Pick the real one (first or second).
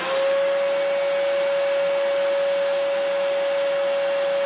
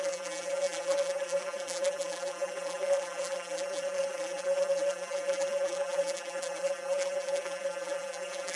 first